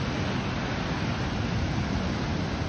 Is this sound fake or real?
real